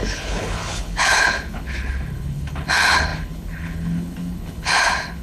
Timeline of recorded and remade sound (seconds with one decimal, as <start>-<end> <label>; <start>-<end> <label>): 0.0-5.2 remade